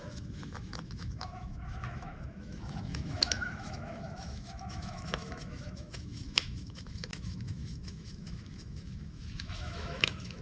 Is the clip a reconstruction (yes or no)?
yes